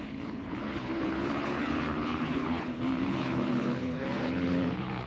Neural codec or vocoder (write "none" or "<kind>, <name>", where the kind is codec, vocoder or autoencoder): codec, HILCodec